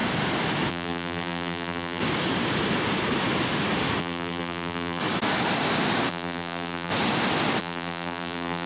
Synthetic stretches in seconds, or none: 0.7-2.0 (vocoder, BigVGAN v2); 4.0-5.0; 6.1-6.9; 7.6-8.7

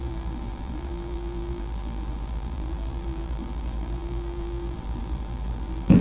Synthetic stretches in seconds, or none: 0.0-6.0 (vocoder, BigVGAN v2)

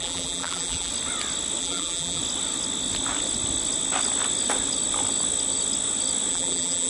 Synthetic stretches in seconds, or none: 0.0-0.9 (vocoder, BigVGAN v2); 1.6-2.2; 6.3-6.9

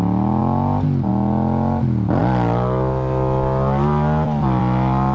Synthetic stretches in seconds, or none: none

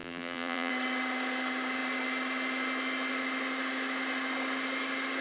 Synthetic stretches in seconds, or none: 0.0-0.7 (vocoder, BigVGAN v2)